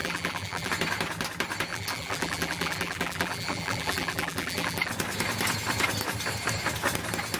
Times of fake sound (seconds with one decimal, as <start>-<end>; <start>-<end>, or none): 0.0-0.7; 1.7-4.9